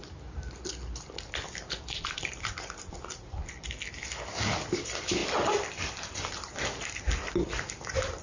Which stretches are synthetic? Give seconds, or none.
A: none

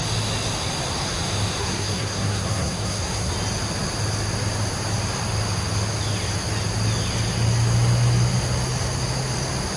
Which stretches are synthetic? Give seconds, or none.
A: 1.6-3.3 (codec, SNAC)

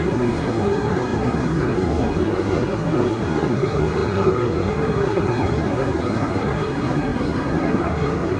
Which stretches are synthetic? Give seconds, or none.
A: 0.0-8.4 (codec, SNAC)